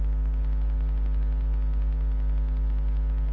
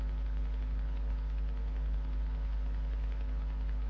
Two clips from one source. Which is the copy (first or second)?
second